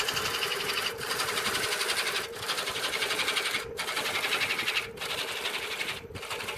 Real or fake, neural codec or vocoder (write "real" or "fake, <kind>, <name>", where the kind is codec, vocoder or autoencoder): real